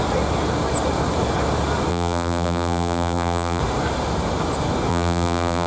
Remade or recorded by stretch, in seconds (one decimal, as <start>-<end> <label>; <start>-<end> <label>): 0.0-1.9 recorded; 1.9-3.6 remade; 3.6-4.9 recorded; 4.9-5.7 remade